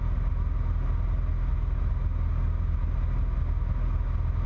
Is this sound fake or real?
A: real